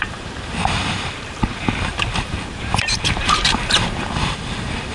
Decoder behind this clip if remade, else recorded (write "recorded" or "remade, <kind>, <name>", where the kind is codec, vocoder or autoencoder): remade, vocoder, BigVGAN v2